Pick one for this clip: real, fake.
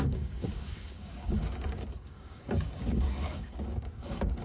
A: fake